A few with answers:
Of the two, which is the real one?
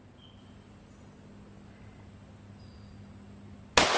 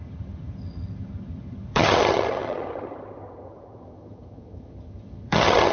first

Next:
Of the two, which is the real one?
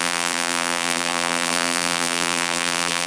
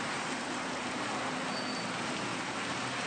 second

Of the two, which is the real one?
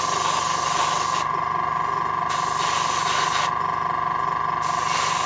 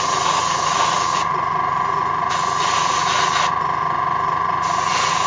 first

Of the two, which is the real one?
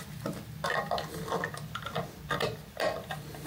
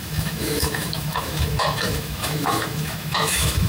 first